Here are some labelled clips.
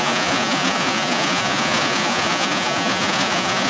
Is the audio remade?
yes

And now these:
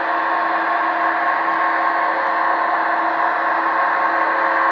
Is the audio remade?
no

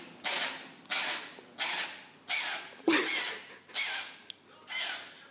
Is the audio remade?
no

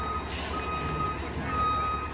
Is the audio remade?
no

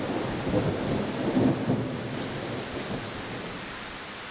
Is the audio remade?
no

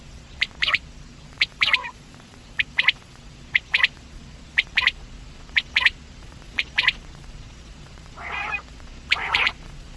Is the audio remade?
yes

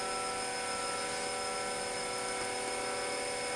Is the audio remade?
no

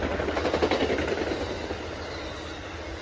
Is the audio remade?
no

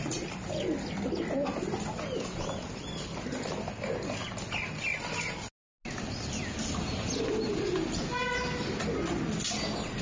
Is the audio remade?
no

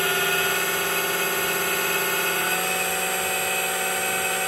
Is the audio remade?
no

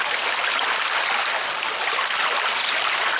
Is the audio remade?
no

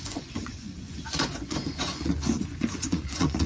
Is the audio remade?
yes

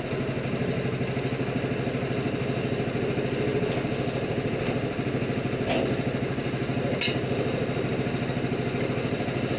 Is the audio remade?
no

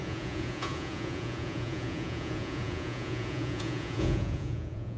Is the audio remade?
yes